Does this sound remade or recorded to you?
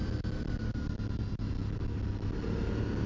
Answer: recorded